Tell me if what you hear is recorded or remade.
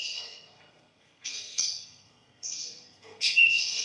remade